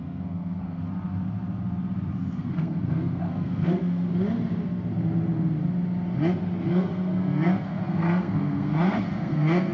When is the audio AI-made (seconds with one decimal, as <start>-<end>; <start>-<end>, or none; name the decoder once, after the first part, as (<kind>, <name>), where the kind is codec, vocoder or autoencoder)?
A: 0.0-0.8 (codec, SNAC); 2.1-4.1; 6.7-9.7